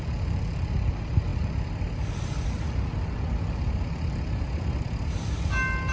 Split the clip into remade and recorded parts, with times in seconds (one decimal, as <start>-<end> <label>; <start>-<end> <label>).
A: 0.0-5.9 recorded